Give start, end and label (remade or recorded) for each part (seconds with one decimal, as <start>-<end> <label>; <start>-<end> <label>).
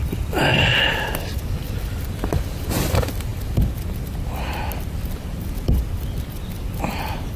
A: 0.0-7.4 remade